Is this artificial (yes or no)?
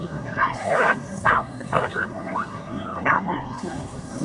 yes